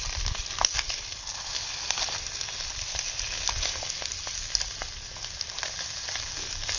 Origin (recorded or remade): recorded